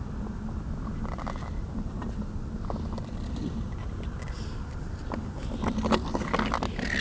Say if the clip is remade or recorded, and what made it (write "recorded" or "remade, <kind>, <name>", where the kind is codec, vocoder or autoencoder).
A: recorded